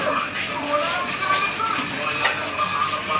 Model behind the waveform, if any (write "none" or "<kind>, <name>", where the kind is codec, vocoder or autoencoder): none